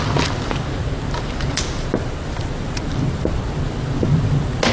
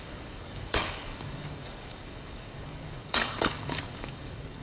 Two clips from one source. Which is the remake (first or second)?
second